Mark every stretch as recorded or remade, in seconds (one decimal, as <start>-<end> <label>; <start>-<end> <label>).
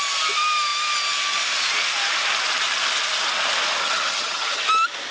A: 0.0-3.8 recorded; 3.8-4.6 remade; 4.6-5.1 recorded